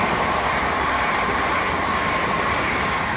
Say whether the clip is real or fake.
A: real